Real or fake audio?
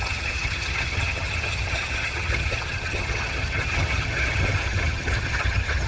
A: fake